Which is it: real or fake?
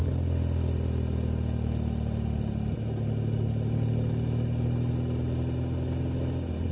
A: real